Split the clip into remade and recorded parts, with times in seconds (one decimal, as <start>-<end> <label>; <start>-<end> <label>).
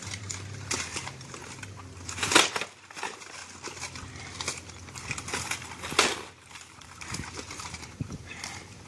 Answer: 0.0-1.4 remade; 1.4-3.0 recorded; 3.0-3.4 remade; 3.4-6.5 recorded; 6.5-8.9 remade